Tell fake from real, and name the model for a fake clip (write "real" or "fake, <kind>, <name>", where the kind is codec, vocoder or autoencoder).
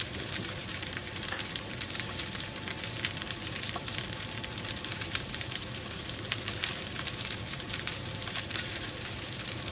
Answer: fake, vocoder, BigVGAN v2